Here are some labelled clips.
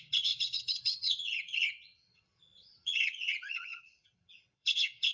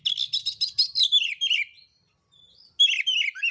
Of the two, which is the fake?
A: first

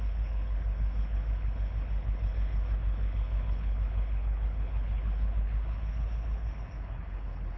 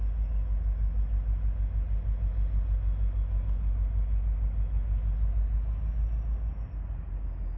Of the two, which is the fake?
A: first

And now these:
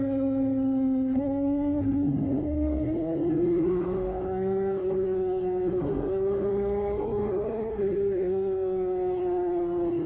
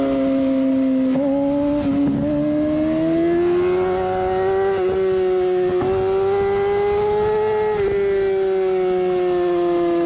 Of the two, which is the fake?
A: first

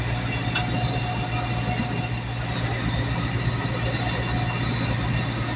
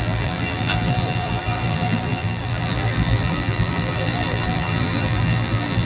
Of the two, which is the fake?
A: second